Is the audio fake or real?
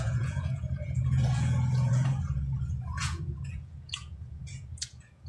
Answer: fake